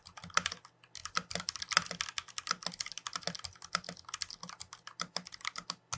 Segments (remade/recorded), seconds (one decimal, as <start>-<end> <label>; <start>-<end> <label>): 0.0-6.0 recorded